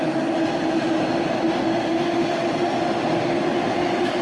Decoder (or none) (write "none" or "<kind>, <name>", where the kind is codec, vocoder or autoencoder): none